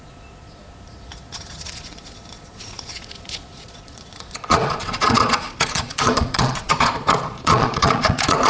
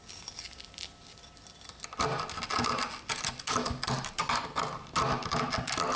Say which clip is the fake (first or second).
first